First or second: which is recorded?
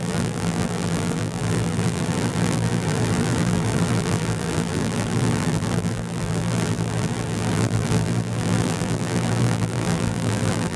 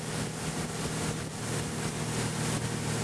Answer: second